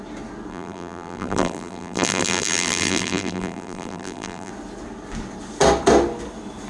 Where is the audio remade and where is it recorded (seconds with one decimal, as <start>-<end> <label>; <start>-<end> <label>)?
0.0-0.5 recorded; 0.5-4.5 remade; 4.5-6.7 recorded